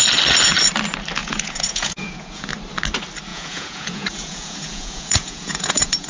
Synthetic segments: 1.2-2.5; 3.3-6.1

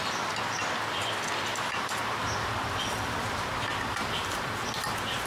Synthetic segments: 1.5-4.7